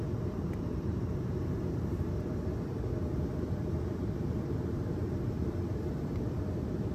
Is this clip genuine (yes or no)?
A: no